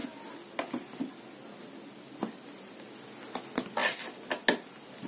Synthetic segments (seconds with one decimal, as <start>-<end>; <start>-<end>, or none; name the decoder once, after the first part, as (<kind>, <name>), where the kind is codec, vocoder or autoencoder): none